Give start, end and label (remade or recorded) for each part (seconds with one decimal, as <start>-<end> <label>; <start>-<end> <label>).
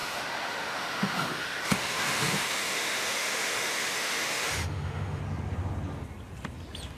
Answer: 0.0-5.2 remade; 5.2-7.0 recorded